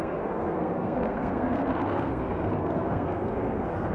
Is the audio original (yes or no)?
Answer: no